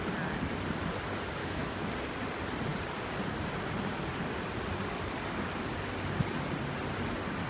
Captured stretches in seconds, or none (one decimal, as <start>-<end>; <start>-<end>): 0.0-1.4; 1.9-7.5